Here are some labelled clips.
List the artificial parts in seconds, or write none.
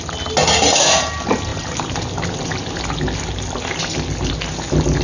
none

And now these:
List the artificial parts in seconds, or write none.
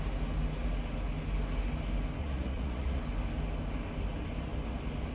2.2-3.0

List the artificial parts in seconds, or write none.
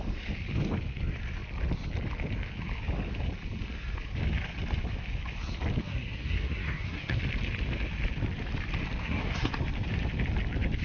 5.8-7.2; 9.0-9.5